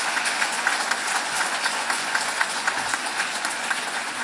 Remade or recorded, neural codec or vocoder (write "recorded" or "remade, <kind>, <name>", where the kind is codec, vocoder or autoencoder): remade, vocoder, Vocos